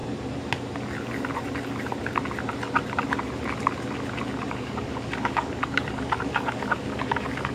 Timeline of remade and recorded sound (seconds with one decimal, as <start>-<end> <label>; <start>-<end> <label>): 0.0-4.5 recorded; 4.5-7.5 remade